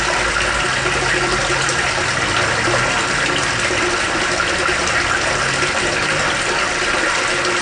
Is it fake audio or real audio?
real